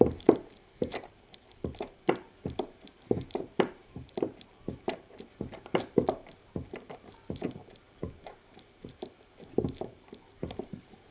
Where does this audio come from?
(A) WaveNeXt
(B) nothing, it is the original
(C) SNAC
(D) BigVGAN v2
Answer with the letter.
D